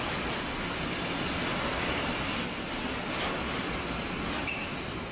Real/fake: real